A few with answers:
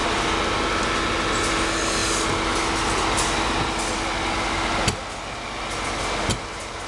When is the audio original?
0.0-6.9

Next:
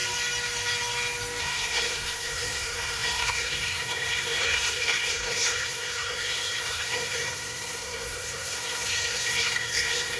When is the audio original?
0.0-1.4

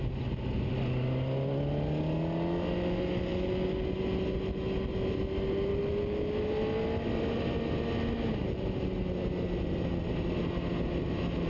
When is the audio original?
0.0-11.5

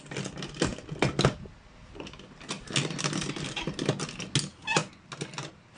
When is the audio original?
0.0-5.8

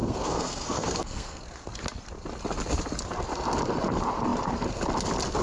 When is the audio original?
1.4-5.4

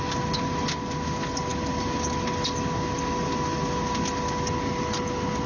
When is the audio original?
0.0-5.5

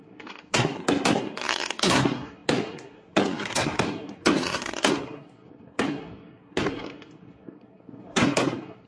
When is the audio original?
none